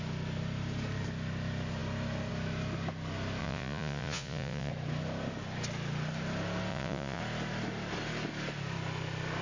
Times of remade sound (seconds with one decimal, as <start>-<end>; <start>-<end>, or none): 3.4-4.7; 6.7-7.2